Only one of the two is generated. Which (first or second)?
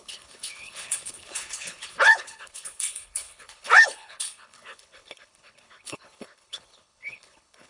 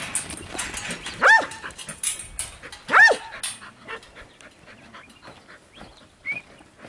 first